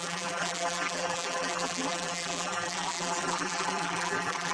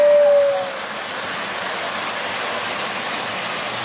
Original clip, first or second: second